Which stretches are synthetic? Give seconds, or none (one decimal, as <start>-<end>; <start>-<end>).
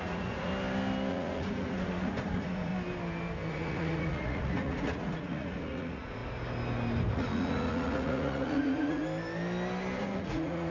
0.0-0.5; 1.1-2.7; 3.5-6.2; 7.1-9.0; 10.0-10.7